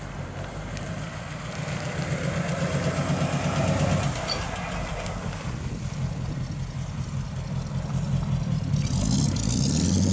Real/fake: real